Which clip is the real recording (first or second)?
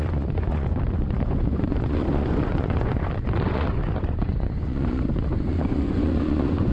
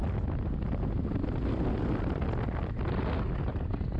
second